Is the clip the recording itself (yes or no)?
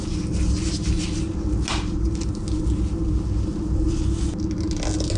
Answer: yes